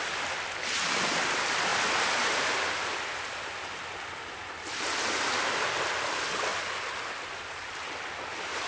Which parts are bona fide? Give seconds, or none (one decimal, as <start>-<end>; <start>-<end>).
0.0-8.7